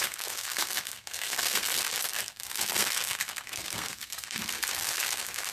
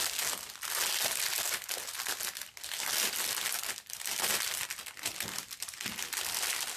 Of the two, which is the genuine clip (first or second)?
second